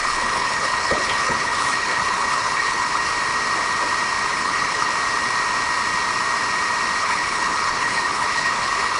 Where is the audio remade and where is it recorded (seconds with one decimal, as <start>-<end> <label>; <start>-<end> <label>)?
0.0-3.1 remade; 3.1-4.3 recorded; 4.3-4.9 remade; 4.9-7.0 recorded; 7.0-9.0 remade